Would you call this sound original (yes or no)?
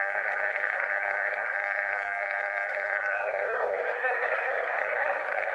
no